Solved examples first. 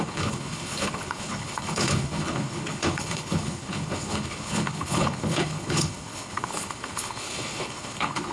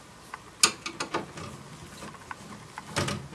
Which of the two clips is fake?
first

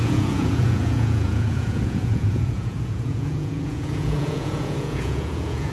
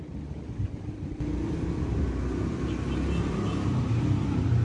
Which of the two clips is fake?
first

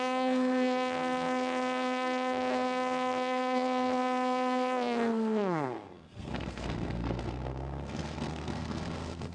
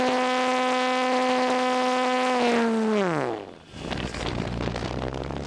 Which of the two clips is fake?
first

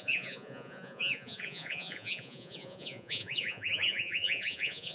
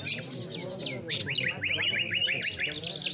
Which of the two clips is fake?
first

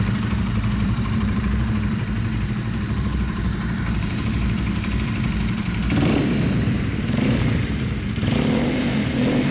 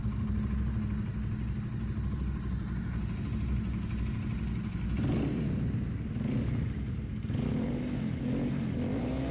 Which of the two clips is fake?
first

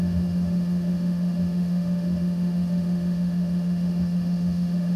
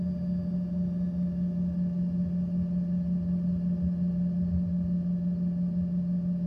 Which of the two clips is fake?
first